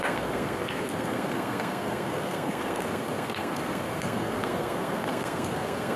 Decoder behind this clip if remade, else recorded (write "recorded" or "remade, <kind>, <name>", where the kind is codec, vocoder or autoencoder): remade, codec, SNAC